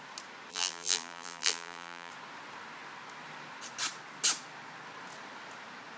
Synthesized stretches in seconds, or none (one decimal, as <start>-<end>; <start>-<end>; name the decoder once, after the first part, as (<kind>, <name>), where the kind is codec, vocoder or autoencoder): 0.5-2.1 (vocoder, BigVGAN v2)